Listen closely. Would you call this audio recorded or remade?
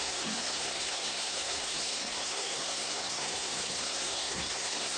remade